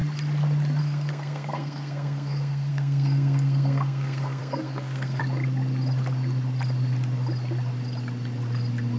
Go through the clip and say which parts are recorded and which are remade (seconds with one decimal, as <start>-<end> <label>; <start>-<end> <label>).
0.0-0.8 recorded; 0.8-5.2 remade; 5.2-9.0 recorded